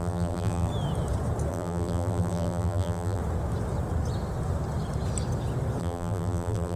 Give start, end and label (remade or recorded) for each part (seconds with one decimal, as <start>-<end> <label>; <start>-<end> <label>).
0.0-0.7 remade; 0.7-1.5 recorded; 1.5-3.2 remade; 3.2-5.8 recorded; 5.8-6.8 remade